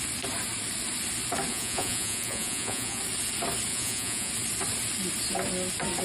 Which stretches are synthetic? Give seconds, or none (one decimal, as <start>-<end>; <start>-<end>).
1.5-3.0; 3.7-4.3